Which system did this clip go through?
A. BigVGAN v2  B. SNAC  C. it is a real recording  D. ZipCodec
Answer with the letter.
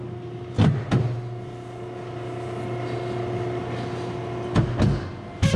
C